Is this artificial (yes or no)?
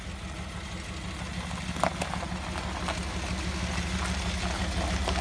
no